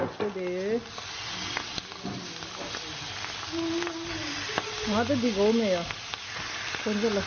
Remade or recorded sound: recorded